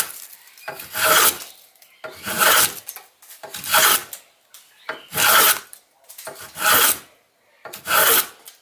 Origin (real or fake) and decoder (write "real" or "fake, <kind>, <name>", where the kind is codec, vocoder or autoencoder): real